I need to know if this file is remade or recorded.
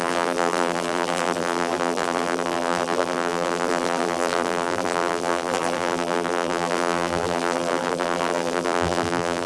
remade